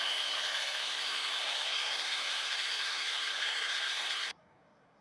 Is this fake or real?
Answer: fake